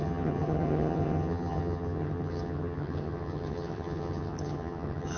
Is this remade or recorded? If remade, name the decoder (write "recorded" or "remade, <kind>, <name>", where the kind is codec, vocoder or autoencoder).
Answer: remade, vocoder, HiFi-GAN